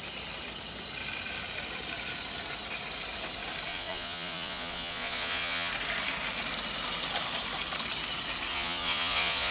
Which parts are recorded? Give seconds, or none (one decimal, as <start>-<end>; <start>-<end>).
0.0-3.7; 5.7-8.5